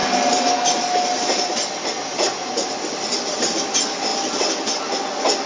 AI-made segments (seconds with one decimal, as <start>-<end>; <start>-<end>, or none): none